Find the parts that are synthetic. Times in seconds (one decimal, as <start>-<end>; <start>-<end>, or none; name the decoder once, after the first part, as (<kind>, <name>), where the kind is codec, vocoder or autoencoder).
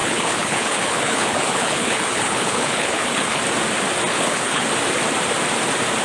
0.0-3.4 (codec, HILCodec); 4.1-4.7